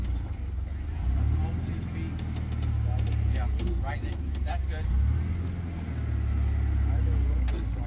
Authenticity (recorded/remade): recorded